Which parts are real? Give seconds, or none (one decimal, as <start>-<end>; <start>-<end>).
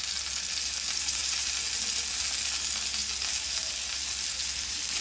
0.0-5.0